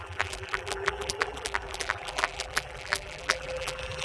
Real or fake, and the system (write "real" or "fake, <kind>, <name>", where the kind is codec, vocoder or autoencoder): fake, vocoder, BigVGAN v2